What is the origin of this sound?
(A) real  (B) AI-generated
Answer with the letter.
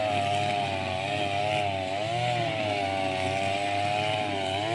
A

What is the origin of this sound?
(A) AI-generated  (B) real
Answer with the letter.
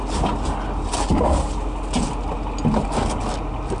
B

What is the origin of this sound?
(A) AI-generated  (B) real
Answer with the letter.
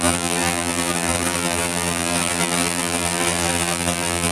A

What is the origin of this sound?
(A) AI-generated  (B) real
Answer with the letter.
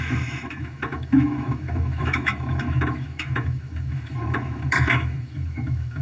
A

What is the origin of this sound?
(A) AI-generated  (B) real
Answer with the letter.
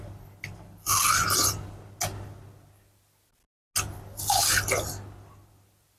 B